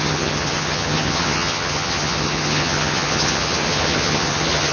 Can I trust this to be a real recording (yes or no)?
no